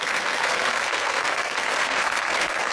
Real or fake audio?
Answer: fake